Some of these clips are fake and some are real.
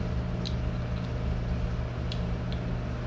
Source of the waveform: real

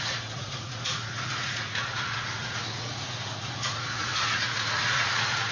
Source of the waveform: fake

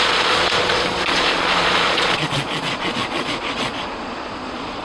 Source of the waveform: fake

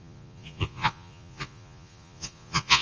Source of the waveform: fake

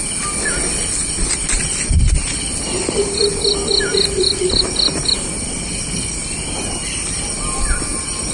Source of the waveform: real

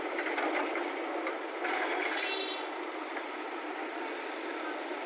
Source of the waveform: real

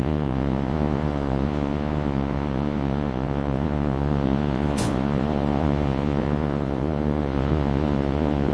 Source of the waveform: fake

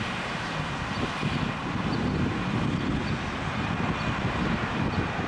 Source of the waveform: real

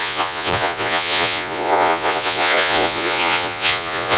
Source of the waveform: fake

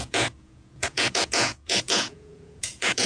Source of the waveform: fake